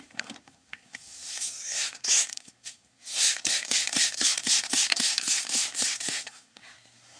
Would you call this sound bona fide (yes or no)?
no